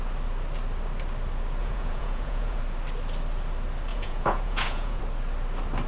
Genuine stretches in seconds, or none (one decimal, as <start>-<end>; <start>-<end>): 0.0-1.6; 2.6-3.9; 5.0-5.9